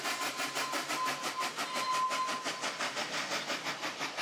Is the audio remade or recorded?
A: recorded